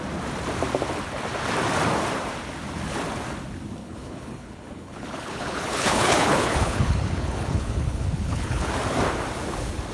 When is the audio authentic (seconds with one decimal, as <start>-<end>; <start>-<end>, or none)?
0.0-3.8; 8.7-9.9